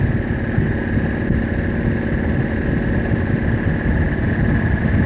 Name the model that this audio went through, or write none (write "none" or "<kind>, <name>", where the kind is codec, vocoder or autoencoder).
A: none